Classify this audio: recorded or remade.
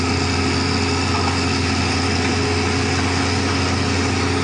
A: recorded